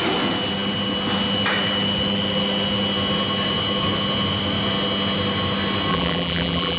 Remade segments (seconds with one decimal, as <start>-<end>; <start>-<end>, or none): 5.9-6.8